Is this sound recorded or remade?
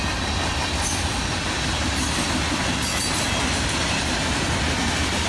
recorded